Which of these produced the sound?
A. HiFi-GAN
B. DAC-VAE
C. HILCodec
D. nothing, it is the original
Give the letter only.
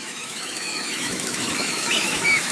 B